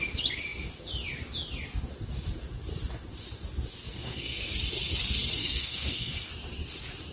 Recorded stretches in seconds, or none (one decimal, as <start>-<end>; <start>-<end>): 0.0-3.9; 4.5-5.4; 6.3-7.1